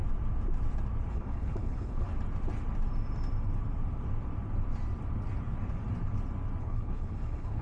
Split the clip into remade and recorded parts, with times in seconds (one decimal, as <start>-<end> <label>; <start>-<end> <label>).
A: 0.0-1.1 recorded; 1.1-2.1 remade; 2.1-6.6 recorded; 6.6-7.6 remade